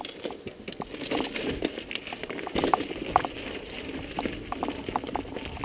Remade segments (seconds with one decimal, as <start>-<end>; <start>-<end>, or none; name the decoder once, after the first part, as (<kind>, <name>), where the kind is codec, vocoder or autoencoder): 1.6-4.7 (vocoder, BigVGAN v2)